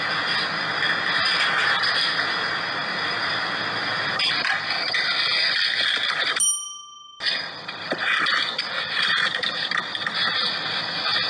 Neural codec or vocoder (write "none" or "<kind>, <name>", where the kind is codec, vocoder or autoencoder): none